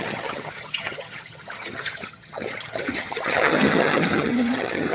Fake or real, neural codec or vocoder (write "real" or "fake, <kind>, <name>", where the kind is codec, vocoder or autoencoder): fake, vocoder, HiFi-GAN